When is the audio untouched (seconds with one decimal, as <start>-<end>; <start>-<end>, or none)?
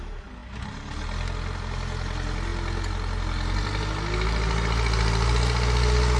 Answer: 0.0-6.2